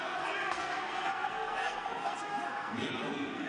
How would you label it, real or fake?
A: fake